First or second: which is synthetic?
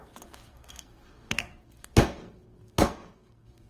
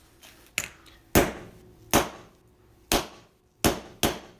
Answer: first